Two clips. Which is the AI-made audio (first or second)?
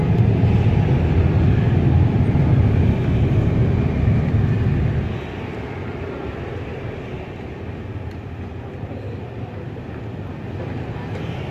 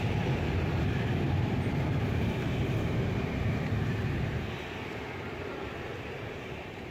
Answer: second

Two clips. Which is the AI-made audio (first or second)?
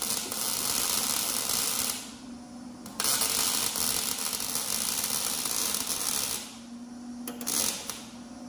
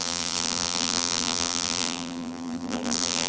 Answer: second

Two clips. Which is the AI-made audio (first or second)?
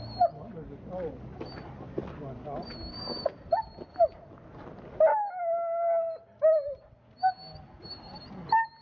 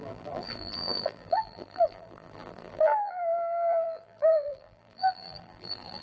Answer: second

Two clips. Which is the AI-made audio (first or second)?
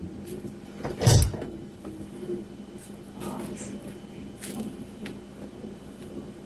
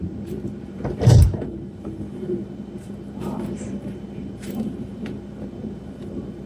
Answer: second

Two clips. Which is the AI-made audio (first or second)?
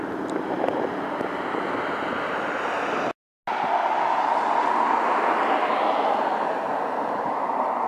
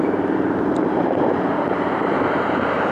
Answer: second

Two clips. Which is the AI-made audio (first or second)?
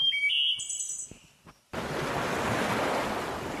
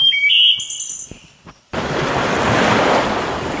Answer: second